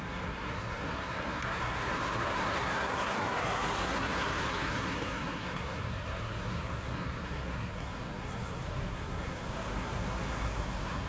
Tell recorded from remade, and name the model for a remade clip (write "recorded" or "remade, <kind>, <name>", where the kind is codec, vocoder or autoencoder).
remade, codec, SNAC